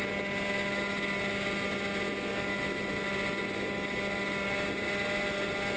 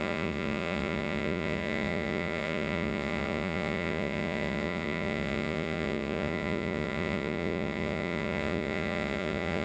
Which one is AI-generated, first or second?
second